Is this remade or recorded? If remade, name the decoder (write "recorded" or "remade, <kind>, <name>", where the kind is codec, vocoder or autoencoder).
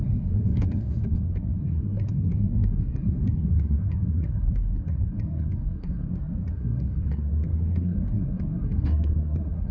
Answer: remade, codec, SNAC